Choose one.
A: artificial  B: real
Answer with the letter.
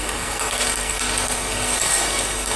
A